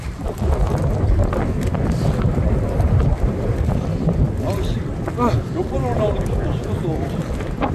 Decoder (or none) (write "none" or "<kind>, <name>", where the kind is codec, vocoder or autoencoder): none